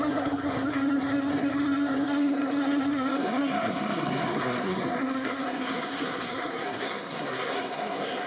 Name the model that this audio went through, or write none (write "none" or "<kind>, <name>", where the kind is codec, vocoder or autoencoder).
codec, SNAC